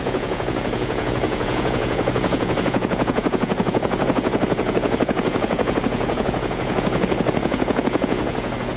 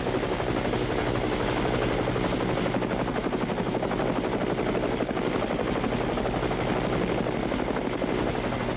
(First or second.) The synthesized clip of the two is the first